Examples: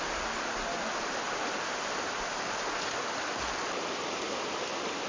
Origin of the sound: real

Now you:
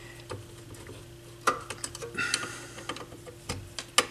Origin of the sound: real